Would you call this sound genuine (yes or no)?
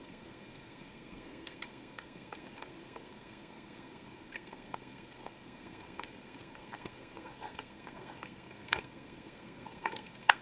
no